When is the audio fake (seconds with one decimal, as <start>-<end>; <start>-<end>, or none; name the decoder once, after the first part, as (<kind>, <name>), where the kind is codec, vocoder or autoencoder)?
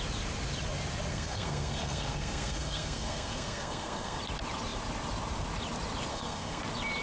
1.1-4.2 (codec, SNAC); 6.1-6.6